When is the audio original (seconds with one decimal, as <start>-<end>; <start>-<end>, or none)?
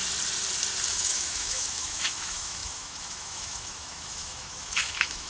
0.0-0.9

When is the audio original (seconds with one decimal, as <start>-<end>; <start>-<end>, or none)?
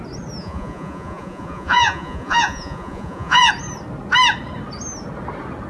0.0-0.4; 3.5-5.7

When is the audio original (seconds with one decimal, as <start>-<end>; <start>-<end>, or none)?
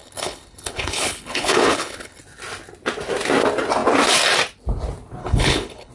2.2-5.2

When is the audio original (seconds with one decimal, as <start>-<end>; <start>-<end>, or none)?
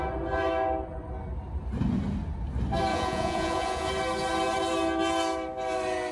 0.0-2.9; 3.9-6.1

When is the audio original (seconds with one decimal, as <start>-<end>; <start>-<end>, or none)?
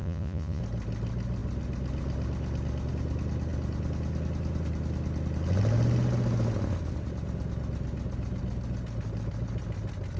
0.6-10.2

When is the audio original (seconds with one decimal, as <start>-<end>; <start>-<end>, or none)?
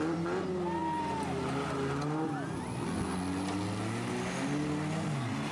0.0-5.5